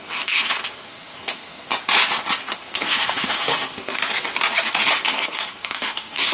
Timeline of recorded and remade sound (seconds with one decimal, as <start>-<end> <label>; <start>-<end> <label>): 0.0-1.7 remade; 1.7-2.4 recorded; 2.4-4.0 remade; 4.0-4.9 recorded; 4.9-6.3 remade